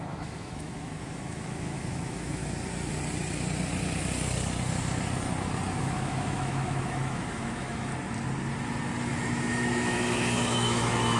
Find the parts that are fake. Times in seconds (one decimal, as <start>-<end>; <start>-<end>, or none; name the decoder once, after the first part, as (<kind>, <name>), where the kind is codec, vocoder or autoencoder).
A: 0.0-2.4 (autoencoder, DAC-VAE); 5.8-7.9; 9.0-11.2